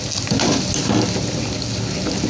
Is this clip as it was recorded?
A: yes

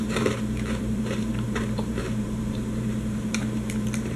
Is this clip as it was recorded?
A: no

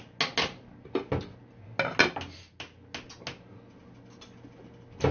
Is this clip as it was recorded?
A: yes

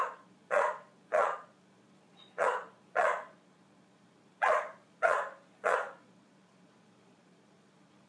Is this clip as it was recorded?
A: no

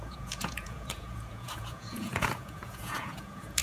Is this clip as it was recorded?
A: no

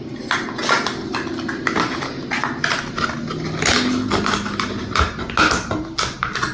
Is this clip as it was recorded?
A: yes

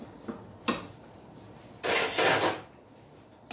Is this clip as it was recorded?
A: yes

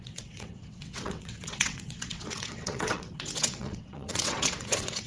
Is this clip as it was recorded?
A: no